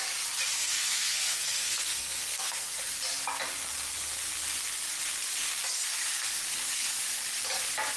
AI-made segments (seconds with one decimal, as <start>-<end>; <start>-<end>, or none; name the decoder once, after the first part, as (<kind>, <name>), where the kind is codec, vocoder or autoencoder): 0.6-2.9 (codec, SNAC)